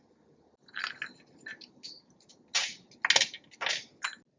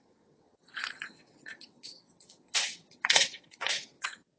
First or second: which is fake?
second